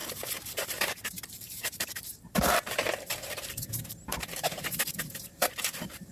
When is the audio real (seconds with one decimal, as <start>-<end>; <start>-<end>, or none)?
none